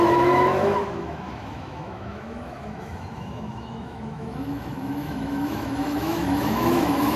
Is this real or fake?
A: fake